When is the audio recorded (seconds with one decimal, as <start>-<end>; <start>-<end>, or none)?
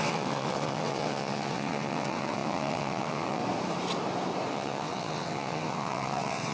3.4-4.5